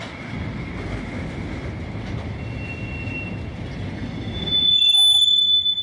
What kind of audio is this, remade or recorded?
recorded